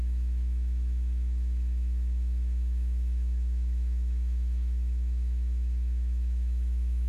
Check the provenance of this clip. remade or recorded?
remade